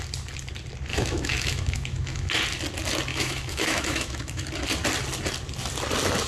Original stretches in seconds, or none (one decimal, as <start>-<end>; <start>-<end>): 0.0-0.9; 2.3-3.1; 4.4-6.3